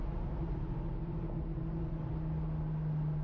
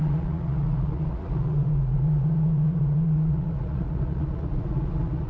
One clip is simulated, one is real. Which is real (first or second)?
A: first